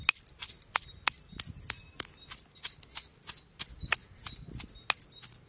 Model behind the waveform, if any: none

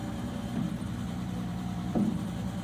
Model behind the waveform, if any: vocoder, BigVGAN v2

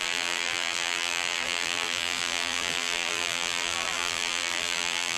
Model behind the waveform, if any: vocoder, BigVGAN v2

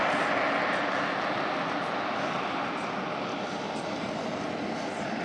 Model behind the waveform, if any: none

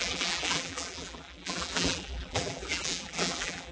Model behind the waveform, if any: vocoder, BigVGAN v2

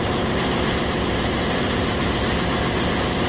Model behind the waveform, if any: vocoder, BigVGAN v2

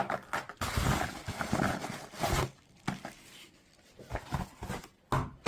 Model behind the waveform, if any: none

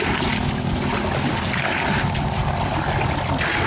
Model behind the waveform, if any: none